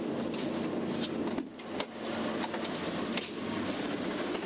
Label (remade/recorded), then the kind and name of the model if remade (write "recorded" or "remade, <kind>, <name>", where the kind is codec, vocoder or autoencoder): recorded